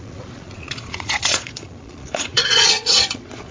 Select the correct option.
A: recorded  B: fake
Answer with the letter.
B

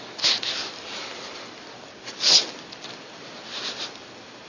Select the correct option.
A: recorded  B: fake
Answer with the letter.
A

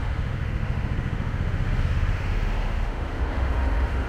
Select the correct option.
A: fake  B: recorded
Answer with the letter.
A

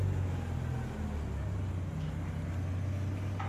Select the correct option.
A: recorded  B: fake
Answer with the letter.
A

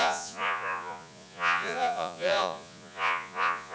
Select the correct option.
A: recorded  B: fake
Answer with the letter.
B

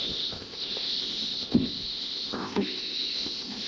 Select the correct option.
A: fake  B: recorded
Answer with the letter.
A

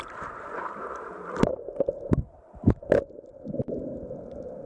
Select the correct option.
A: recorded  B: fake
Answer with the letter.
A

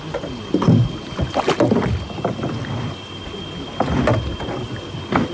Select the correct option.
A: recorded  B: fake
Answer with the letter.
A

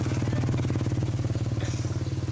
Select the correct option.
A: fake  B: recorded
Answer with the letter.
B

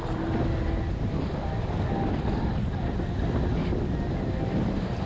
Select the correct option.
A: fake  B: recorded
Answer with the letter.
B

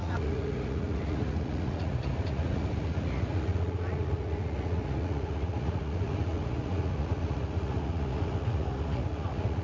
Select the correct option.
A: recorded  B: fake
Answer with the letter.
B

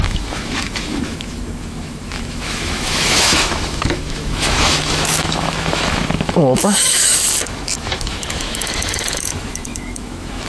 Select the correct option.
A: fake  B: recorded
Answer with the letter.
A